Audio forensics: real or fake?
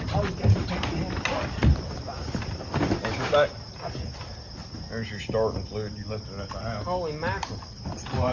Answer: real